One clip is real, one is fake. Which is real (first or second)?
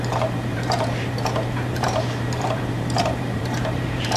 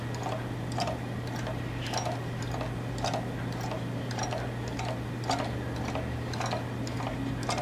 second